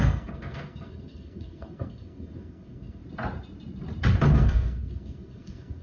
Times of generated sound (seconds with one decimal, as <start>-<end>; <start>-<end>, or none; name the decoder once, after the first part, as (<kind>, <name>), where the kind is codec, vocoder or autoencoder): 0.0-3.0 (codec, SNAC); 4.3-5.8